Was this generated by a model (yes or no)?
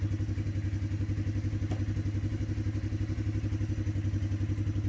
no